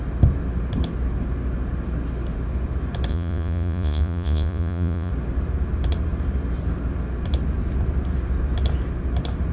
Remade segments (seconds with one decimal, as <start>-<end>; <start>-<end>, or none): 3.1-5.1